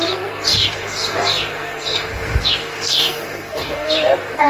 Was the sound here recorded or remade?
remade